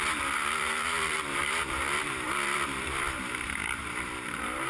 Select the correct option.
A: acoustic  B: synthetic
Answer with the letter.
B